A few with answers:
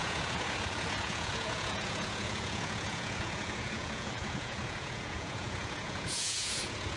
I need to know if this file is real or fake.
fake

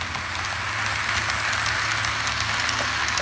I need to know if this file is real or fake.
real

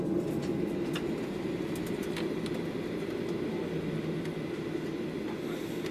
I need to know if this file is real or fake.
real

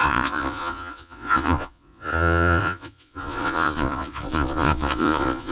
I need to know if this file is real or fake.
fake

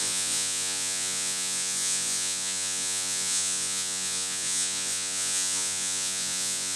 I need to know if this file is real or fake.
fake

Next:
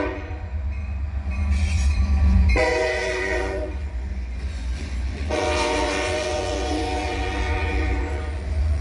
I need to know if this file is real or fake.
fake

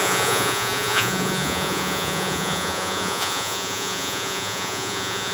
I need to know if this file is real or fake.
fake